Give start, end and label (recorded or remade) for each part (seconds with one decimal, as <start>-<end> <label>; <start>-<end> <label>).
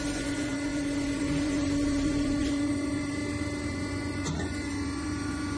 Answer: 0.0-3.2 remade; 3.2-3.7 recorded; 3.7-5.6 remade